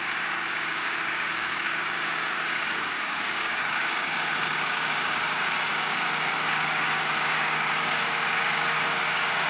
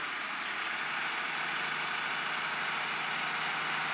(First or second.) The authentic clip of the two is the second